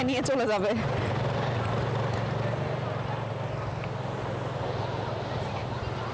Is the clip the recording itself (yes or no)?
yes